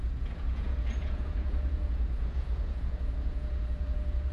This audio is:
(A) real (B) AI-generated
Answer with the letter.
B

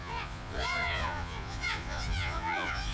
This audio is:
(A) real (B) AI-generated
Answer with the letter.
B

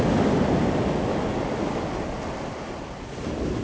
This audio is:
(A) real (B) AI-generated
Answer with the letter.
A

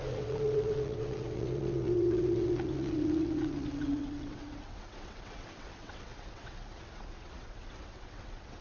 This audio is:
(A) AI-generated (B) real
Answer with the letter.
A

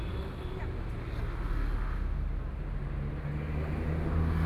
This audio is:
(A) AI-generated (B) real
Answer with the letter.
B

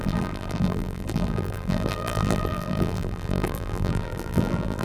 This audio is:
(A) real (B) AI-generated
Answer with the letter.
B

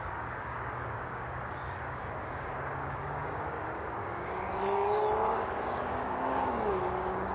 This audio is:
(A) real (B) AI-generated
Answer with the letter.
B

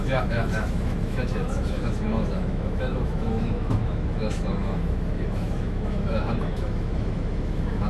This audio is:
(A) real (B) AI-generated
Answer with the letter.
B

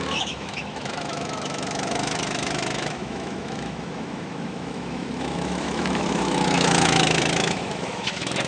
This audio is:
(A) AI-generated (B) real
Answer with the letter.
A